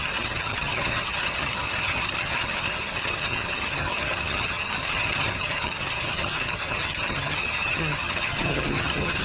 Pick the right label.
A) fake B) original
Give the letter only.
A